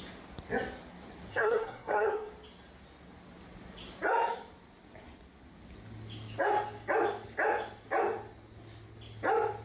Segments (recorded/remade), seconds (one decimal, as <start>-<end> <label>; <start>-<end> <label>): 0.0-1.3 recorded; 1.3-2.3 remade; 2.3-9.6 recorded